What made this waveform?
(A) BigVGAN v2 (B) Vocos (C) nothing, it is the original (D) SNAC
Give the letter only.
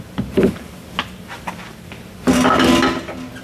C